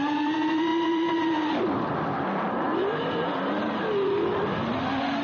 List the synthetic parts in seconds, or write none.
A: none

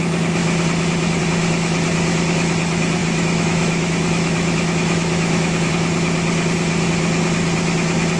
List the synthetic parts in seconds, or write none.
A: 3.0-5.7 (autoencoder, DAC-VAE)